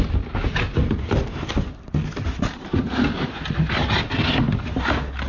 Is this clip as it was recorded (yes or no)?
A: yes